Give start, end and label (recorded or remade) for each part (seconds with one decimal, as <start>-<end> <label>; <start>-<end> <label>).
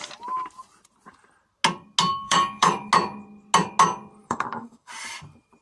0.0-2.1 recorded; 2.1-2.9 remade; 2.9-4.2 recorded; 4.2-4.9 remade; 4.9-5.6 recorded